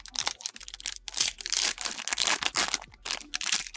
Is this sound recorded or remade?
recorded